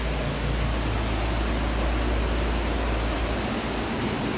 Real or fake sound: real